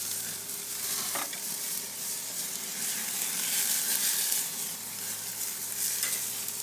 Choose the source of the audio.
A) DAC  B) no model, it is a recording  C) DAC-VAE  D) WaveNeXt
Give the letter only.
B